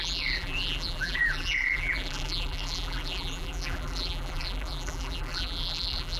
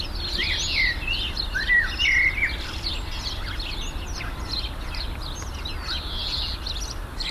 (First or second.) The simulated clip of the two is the first